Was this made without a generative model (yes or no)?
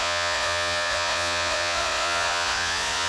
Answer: no